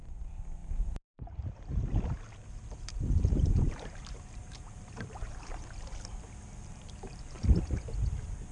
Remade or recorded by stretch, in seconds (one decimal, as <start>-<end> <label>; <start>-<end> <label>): 0.0-0.6 recorded; 0.6-5.3 remade; 5.3-6.6 recorded; 6.6-7.6 remade; 7.6-8.5 recorded